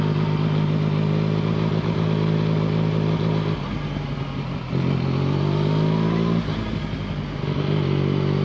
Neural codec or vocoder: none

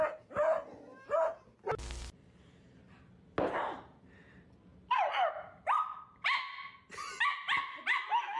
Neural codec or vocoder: none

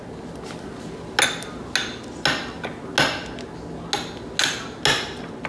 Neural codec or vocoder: none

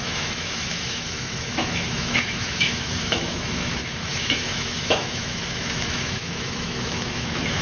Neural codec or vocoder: autoencoder, DAC-VAE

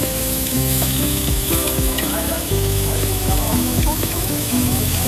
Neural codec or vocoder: autoencoder, DAC-VAE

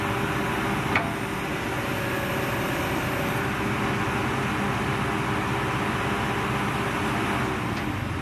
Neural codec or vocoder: none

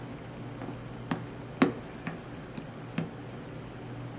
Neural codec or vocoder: none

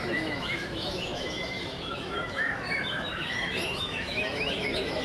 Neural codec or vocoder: autoencoder, DAC-VAE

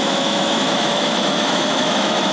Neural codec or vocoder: autoencoder, DAC-VAE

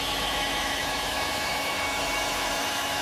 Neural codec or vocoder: autoencoder, DAC-VAE